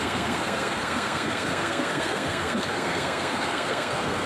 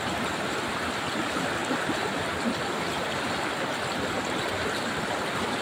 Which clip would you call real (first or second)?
second